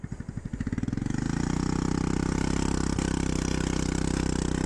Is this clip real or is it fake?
real